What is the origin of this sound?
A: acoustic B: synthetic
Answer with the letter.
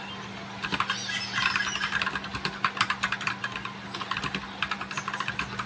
A